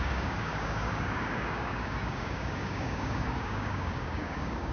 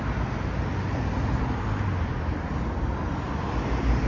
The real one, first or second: second